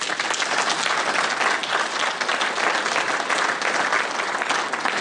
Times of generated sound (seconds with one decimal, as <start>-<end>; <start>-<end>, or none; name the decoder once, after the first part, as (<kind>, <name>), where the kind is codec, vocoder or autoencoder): none